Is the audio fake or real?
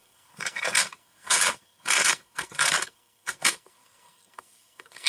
fake